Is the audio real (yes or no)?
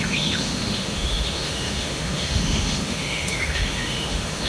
no